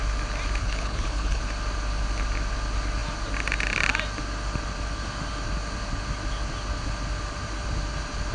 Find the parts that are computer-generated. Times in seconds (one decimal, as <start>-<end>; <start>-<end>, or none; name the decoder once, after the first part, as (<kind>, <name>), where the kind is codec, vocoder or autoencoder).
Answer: 0.6-1.4 (codec, HILCodec)